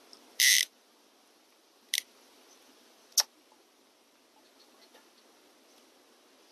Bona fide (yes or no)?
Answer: yes